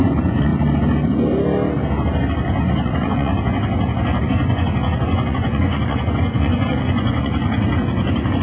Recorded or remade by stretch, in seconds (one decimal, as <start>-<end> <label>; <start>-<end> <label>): 0.0-0.5 remade; 0.5-2.6 recorded; 2.6-3.3 remade; 3.3-4.2 recorded; 4.2-7.4 remade; 7.4-8.4 recorded